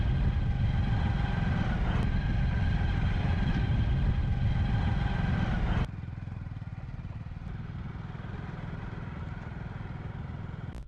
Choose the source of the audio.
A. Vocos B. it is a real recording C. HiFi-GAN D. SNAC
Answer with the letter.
B